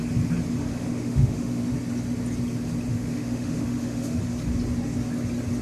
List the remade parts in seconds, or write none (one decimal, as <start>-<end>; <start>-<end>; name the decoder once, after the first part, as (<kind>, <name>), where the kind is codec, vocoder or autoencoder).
0.7-1.7 (autoencoder, DAC-VAE); 2.9-4.2